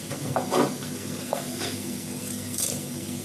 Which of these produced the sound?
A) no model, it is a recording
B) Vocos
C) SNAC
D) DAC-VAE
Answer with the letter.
C